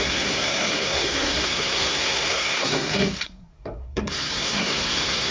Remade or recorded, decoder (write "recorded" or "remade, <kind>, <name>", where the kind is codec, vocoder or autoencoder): remade, codec, SNAC